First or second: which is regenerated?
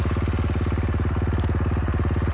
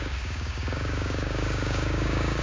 second